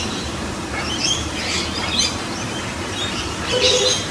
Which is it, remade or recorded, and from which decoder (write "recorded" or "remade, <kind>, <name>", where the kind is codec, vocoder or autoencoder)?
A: remade, vocoder, BigVGAN v2